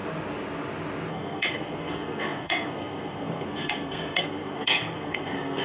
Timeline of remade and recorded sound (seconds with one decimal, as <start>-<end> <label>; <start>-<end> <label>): 0.0-1.1 recorded; 1.1-5.6 remade